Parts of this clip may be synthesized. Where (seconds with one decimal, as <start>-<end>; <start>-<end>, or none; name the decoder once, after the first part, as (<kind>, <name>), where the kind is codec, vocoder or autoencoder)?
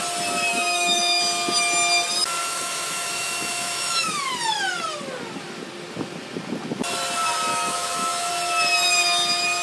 0.5-1.2 (autoencoder, DAC-VAE); 2.4-4.2; 7.5-8.3